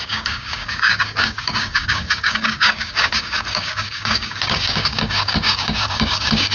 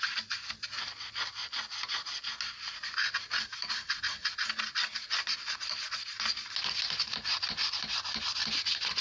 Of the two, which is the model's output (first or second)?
first